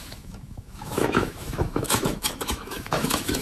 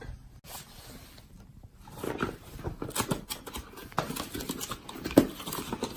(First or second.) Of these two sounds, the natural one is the second